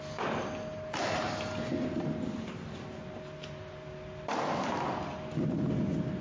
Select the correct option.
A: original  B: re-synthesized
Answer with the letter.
A